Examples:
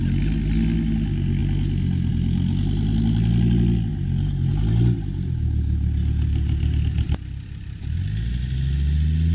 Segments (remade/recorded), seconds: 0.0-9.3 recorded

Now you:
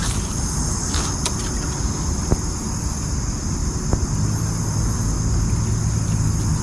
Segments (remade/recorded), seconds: 0.0-6.6 recorded